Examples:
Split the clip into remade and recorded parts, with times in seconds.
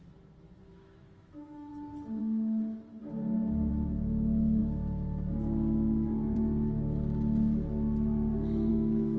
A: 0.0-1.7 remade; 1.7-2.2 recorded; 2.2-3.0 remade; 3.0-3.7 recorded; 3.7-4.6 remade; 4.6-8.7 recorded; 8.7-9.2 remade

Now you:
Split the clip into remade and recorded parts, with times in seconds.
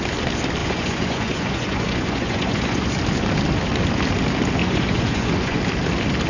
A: 0.0-0.6 recorded; 0.6-2.9 remade; 2.9-4.6 recorded; 4.6-5.6 remade; 5.6-6.3 recorded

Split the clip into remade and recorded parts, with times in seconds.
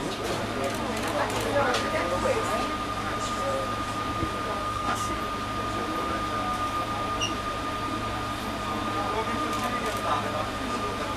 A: 0.0-4.6 recorded; 4.6-5.2 remade; 5.2-11.2 recorded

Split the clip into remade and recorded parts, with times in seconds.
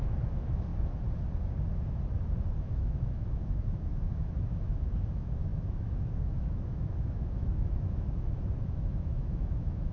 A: 0.0-0.7 remade; 0.7-2.6 recorded; 2.6-9.9 remade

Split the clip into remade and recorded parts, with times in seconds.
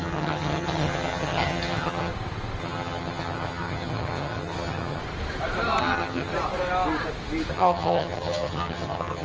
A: 0.0-2.1 remade; 2.1-2.6 recorded; 2.6-5.0 remade; 5.0-5.8 recorded; 5.8-6.3 remade; 6.3-7.5 recorded; 7.5-9.2 remade